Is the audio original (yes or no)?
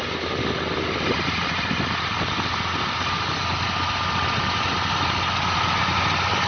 yes